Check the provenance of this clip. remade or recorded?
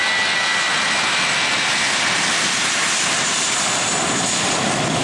recorded